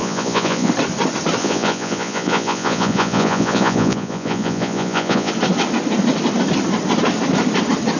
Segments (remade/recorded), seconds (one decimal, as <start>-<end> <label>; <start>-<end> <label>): 0.0-0.7 remade; 0.7-1.4 recorded; 1.4-5.3 remade; 5.3-8.0 recorded